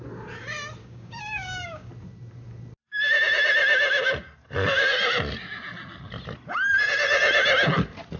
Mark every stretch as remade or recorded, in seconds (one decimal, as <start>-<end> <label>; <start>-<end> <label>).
0.0-0.8 recorded; 0.8-1.9 remade; 1.9-8.2 recorded